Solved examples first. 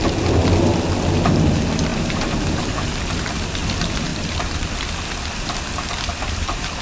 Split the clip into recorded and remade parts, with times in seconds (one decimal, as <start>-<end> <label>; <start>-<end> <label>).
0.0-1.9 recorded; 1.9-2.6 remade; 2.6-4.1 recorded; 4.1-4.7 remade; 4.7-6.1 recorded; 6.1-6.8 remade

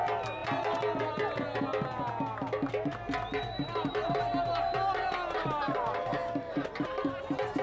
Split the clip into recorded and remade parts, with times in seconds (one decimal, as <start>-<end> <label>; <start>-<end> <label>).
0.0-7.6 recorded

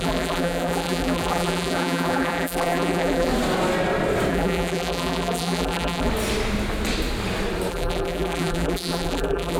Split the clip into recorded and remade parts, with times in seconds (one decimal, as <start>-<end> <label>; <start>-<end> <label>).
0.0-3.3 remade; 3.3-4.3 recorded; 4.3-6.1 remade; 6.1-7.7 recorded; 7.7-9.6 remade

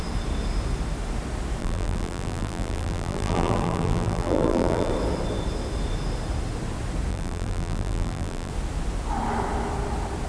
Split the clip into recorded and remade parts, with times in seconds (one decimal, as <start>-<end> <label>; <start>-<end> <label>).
0.0-1.6 recorded; 1.6-4.9 remade; 4.9-7.1 recorded; 7.1-8.5 remade; 8.5-10.3 recorded

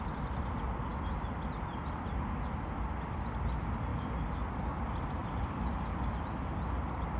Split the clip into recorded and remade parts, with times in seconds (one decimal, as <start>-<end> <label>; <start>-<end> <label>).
0.0-5.2 recorded; 5.2-5.7 remade; 5.7-7.2 recorded